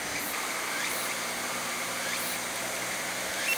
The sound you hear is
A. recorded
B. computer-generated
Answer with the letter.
B